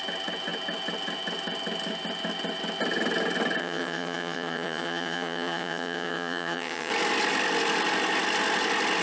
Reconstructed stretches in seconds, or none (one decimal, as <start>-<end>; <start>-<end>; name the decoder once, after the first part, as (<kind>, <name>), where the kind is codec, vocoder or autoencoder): 3.6-6.9 (vocoder, HiFi-GAN)